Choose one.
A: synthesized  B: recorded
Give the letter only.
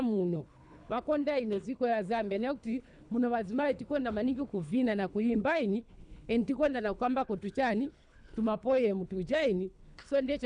A